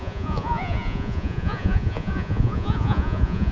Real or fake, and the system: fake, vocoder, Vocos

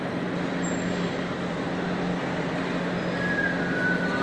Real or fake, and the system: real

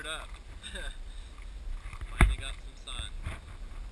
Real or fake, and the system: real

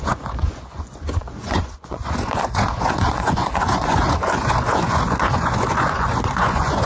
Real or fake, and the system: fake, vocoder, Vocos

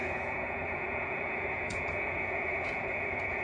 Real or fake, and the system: fake, vocoder, Vocos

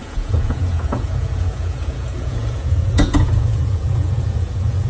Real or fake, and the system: fake, vocoder, Vocos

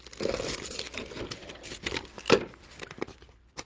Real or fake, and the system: real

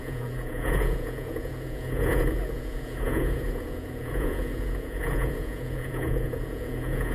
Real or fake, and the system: fake, vocoder, Vocos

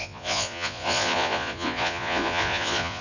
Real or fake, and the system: fake, vocoder, Vocos